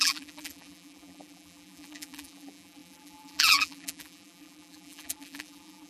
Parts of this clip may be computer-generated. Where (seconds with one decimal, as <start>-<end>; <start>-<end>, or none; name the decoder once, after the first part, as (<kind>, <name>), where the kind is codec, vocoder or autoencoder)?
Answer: 0.0-5.9 (vocoder, BigVGAN v2)